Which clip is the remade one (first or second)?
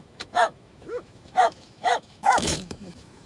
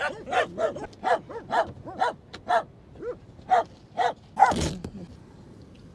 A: first